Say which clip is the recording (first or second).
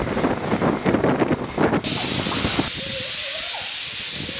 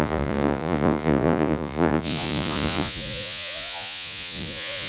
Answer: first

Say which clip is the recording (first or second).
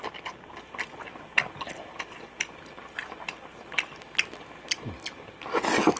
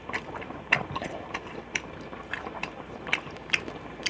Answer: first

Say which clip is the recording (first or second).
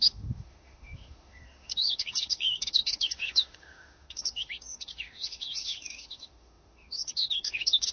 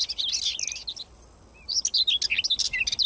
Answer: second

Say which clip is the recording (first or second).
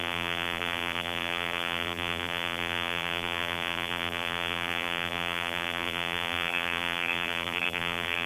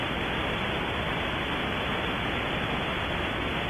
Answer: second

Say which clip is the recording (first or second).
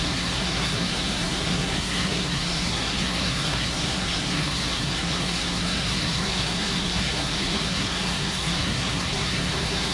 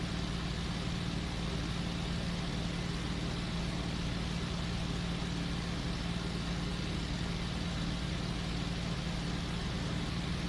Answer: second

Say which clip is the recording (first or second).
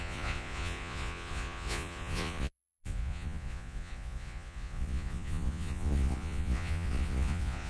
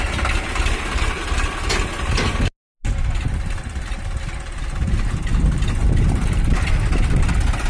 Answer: second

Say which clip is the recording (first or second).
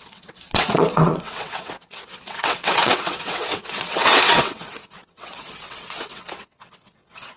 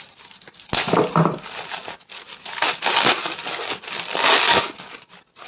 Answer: second